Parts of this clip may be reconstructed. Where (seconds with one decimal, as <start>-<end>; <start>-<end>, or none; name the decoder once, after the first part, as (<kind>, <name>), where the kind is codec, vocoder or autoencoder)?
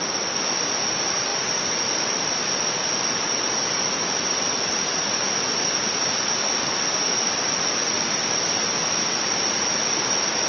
none